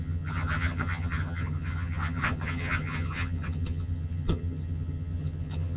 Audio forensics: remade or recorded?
remade